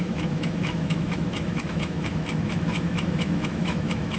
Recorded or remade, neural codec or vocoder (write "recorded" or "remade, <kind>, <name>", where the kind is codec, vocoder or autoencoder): remade, autoencoder, DAC-VAE